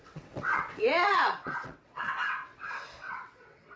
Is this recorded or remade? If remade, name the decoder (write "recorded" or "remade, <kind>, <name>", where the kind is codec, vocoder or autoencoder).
remade, vocoder, WaveNeXt